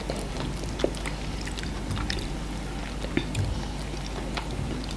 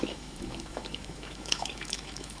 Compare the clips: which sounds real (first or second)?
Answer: first